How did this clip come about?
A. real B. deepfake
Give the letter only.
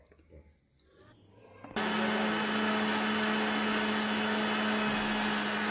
A